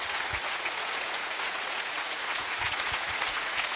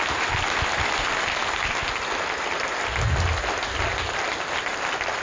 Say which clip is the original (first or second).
second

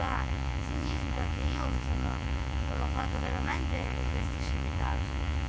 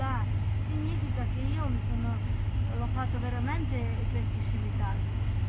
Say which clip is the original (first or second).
second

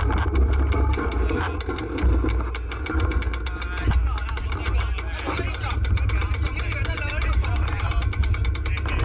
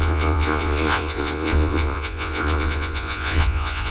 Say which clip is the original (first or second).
first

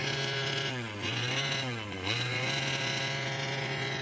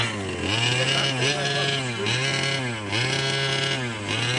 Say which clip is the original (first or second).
second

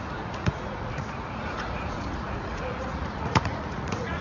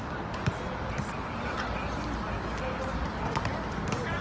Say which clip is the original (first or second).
second